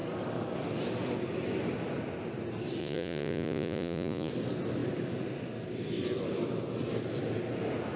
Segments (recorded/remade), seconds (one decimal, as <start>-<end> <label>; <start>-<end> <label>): 0.0-2.8 recorded; 2.8-4.3 remade; 4.3-8.0 recorded

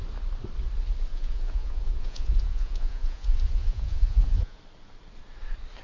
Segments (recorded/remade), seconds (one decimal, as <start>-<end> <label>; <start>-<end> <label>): 0.0-1.1 recorded; 1.1-4.6 remade; 4.6-5.8 recorded

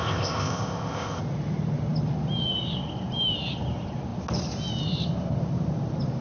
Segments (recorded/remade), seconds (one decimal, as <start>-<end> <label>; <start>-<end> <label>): 0.0-1.2 remade; 1.2-6.2 recorded

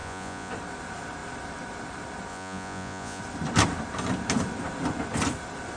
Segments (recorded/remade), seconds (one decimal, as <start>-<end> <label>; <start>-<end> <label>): 0.0-0.5 remade; 0.5-2.3 recorded; 2.3-3.2 remade; 3.2-5.8 recorded

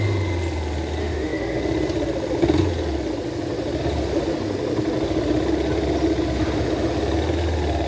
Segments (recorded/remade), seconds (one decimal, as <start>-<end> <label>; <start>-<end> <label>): 0.0-1.0 recorded; 1.0-1.6 remade; 1.6-7.9 recorded

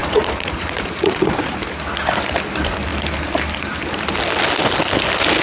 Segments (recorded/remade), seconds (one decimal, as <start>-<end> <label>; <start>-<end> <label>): 0.0-1.2 remade; 1.2-5.4 recorded